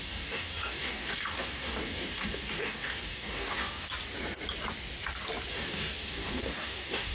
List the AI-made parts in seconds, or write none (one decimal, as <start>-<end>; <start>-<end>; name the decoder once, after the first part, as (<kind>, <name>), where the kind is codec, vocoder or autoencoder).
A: 0.0-3.9 (codec, DAC); 5.5-7.1